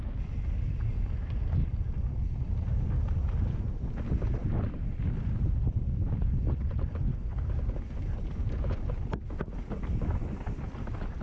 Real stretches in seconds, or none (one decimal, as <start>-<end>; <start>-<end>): 0.0-11.2